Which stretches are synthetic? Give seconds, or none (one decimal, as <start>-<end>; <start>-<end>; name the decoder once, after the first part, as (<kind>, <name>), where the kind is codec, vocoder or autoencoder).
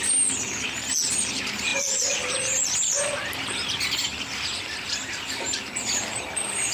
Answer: 1.7-5.7 (vocoder, BigVGAN v2)